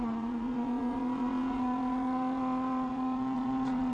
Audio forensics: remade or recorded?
remade